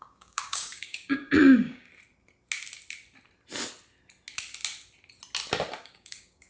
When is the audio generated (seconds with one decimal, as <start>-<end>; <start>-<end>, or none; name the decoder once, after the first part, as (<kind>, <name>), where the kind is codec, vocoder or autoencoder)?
0.0-1.9 (codec, DAC); 5.8-6.5